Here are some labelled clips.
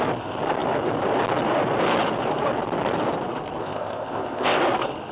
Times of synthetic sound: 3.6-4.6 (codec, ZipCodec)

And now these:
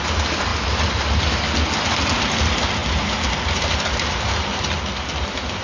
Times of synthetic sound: none

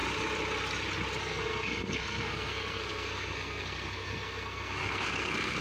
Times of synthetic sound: 1.2-5.6 (codec, SNAC)

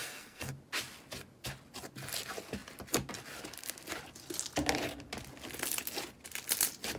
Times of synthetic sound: 0.0-0.5 (codec, SNAC)

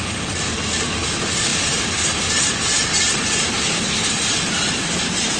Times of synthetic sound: none

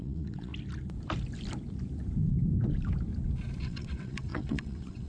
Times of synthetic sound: 0.0-0.5 (vocoder, WaveNeXt); 3.6-5.1